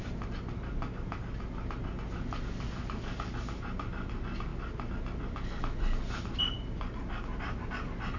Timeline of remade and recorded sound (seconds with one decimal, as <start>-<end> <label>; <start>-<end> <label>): 0.0-8.2 recorded